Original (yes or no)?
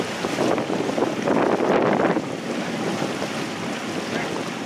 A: no